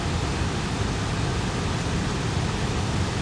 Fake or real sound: real